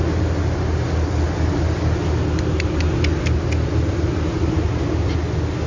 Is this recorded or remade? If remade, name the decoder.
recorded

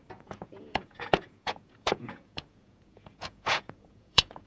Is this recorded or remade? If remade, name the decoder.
remade, vocoder, Vocos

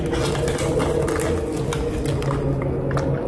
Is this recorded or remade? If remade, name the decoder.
recorded